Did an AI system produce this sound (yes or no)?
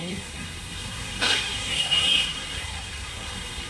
yes